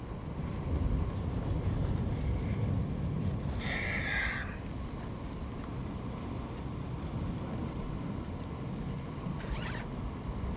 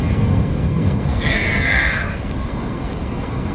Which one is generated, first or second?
second